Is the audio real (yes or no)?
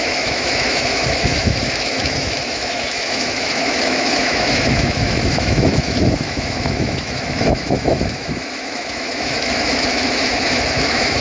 no